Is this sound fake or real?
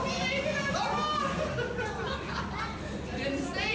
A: real